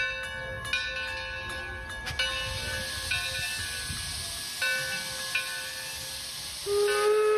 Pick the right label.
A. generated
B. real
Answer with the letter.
B